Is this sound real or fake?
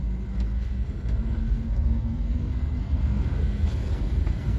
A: fake